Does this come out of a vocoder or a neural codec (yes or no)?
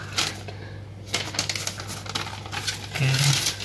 no